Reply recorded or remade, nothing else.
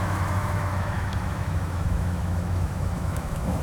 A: remade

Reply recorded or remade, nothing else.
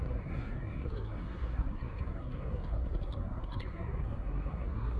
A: remade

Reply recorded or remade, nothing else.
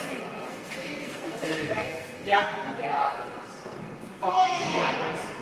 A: remade